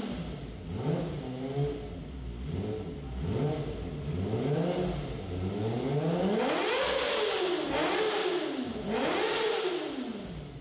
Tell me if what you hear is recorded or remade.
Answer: recorded